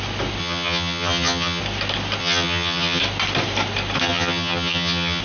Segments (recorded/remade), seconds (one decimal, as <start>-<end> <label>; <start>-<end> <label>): 0.0-0.4 recorded; 0.4-1.6 remade; 1.6-2.2 recorded; 2.2-3.0 remade; 3.0-4.0 recorded; 4.0-5.2 remade